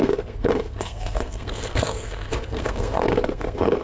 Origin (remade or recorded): remade